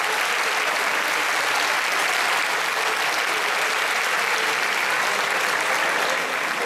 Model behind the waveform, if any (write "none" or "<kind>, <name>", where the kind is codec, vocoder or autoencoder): none